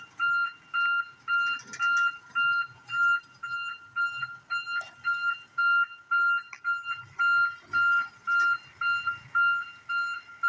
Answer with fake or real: real